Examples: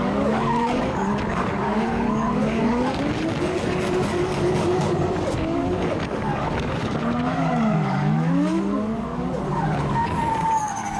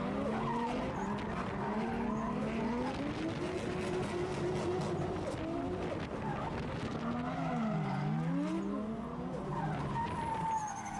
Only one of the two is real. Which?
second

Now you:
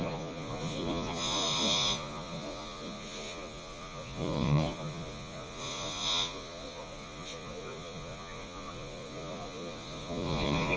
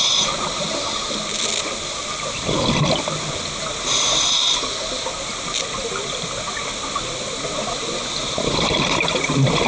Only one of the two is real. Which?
second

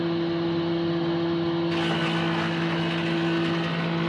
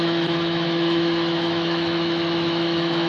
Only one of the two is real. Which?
first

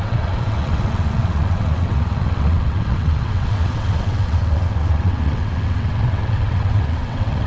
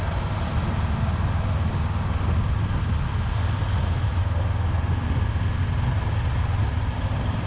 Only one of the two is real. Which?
second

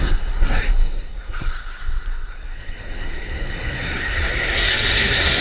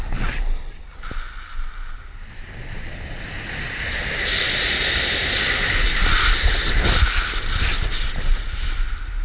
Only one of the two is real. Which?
second